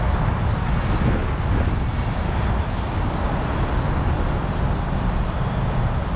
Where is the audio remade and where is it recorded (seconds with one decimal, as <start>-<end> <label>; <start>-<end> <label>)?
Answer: 0.0-6.2 recorded